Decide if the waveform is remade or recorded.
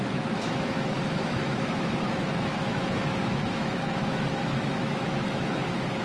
remade